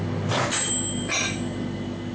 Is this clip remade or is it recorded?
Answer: recorded